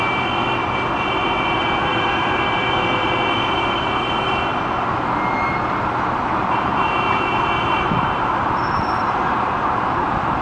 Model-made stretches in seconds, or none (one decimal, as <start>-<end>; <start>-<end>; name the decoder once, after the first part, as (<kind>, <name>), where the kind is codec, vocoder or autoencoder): 1.9-2.8 (vocoder, BigVGAN v2)